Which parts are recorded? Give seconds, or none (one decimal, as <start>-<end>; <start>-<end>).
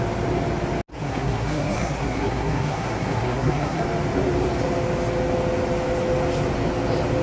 0.0-0.9; 3.8-7.2